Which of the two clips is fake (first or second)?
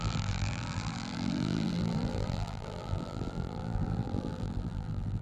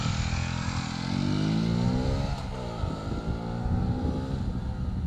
first